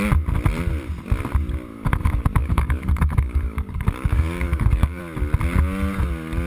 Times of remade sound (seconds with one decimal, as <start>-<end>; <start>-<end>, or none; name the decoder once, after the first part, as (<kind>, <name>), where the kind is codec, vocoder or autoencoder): 1.7-5.0 (codec, DAC)